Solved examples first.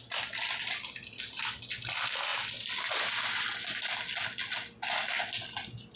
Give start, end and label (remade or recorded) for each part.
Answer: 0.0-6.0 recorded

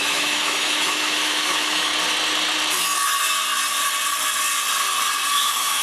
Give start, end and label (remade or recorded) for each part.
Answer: 0.0-1.9 remade; 1.9-5.3 recorded; 5.3-5.8 remade